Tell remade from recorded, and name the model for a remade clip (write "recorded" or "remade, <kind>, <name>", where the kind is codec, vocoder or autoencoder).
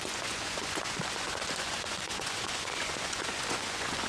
remade, vocoder, Vocos